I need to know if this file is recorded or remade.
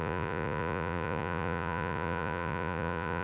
remade